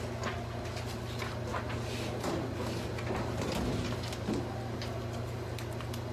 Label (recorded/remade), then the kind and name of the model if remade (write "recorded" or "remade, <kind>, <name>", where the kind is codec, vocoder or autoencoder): recorded